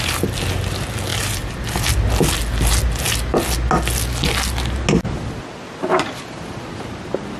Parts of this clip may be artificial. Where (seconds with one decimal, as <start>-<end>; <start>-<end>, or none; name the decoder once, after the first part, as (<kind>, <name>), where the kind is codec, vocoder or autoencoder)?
none